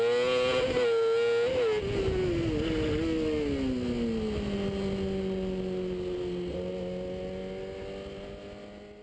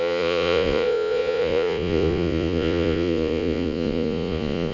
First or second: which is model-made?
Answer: second